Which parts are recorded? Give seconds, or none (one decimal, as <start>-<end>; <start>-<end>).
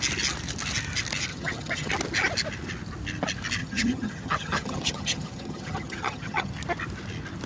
0.0-1.3; 1.9-3.6; 6.5-7.5